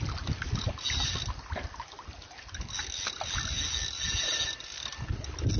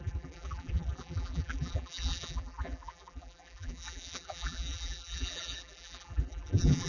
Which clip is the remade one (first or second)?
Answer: second